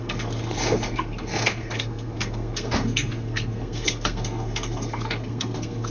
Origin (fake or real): fake